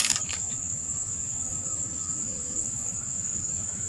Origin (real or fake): fake